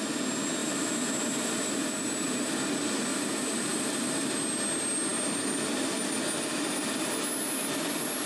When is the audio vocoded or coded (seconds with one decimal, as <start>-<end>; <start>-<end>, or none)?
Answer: 0.6-2.6; 3.1-4.3